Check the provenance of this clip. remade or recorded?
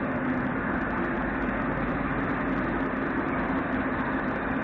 recorded